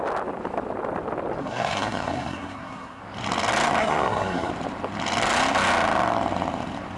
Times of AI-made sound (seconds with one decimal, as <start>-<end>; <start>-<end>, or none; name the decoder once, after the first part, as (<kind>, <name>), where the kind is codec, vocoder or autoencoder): 1.4-3.0 (codec, SNAC); 3.8-4.5

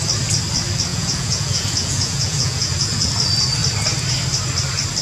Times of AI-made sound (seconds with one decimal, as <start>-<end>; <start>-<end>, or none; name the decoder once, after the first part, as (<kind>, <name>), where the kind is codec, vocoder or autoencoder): 0.9-3.1 (vocoder, Vocos)

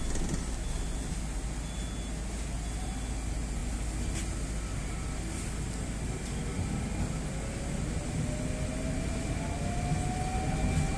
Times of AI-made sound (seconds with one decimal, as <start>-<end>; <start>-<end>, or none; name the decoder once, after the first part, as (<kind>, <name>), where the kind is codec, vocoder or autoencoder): none

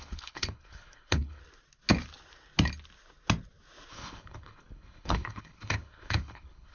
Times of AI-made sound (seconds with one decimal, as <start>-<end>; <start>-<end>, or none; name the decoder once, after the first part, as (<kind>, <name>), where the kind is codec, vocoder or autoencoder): 0.0-1.4 (codec, HILCodec); 3.9-6.7

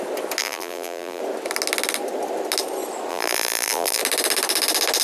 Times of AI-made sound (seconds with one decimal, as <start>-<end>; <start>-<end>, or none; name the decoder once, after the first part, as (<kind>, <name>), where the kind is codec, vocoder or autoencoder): 0.4-1.2 (vocoder, BigVGAN v2); 3.1-4.0